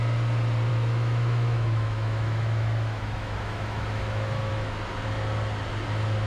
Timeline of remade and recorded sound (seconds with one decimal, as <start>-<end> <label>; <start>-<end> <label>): 0.0-0.7 recorded; 0.7-4.5 remade; 4.5-6.3 recorded